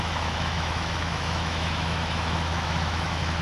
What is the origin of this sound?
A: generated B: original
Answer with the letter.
A